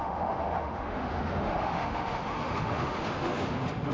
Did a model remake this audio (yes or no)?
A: yes